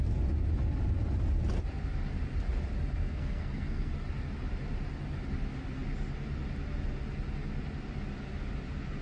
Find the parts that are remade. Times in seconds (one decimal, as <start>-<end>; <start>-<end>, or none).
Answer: 3.0-3.9

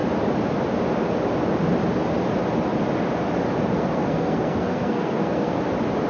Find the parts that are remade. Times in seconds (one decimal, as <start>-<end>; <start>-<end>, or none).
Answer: 3.7-5.6

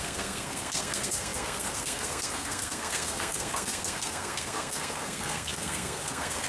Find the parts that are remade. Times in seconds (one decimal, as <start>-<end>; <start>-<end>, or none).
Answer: 0.0-6.5

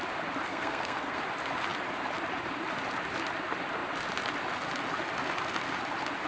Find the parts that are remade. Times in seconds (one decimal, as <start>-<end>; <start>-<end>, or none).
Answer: 0.5-1.2

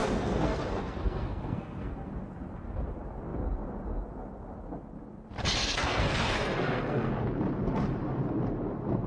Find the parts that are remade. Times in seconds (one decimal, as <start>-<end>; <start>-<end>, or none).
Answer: 0.0-2.1; 5.6-7.1